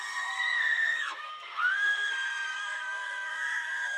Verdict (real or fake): fake